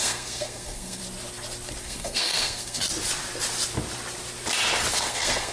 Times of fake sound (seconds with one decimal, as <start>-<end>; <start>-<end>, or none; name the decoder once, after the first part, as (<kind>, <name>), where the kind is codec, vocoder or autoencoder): 0.0-1.0 (codec, SNAC); 1.8-2.8; 4.9-5.5